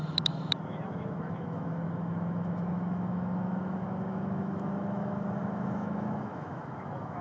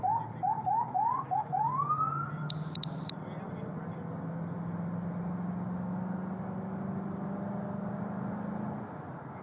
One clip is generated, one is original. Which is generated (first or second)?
first